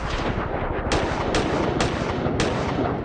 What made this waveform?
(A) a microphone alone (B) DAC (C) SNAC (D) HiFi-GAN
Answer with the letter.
A